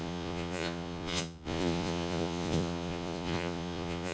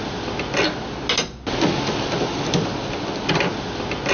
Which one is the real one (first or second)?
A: second